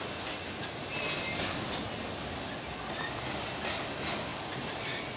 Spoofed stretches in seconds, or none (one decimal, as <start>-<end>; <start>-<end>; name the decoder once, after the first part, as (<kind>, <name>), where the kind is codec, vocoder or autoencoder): none